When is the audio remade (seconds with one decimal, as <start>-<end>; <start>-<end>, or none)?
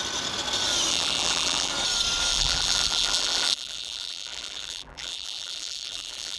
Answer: 0.9-1.7; 2.3-6.4